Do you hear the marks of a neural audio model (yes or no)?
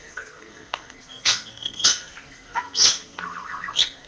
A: yes